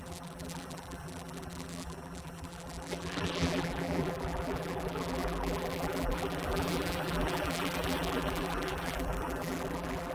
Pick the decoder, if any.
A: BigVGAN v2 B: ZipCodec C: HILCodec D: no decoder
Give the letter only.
A